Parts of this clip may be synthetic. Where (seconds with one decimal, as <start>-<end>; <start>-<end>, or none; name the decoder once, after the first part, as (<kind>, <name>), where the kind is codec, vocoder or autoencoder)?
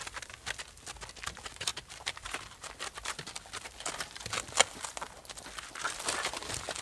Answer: 1.1-6.8 (vocoder, BigVGAN v2)